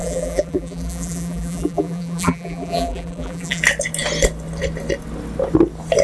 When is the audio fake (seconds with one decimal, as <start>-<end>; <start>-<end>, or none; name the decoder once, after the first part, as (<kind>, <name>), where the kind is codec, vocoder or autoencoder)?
0.0-3.6 (vocoder, BigVGAN v2)